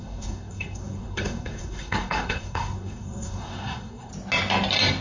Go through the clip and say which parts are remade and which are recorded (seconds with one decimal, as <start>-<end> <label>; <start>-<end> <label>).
0.0-4.1 remade; 4.1-5.0 recorded